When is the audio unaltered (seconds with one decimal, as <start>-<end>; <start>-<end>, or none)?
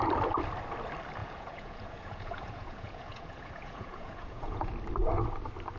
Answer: 0.0-1.2; 4.7-5.8